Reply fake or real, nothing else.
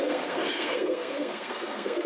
fake